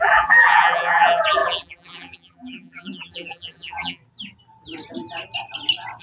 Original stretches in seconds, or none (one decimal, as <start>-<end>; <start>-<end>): 4.0-6.0